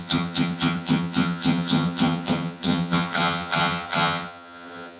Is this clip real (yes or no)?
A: no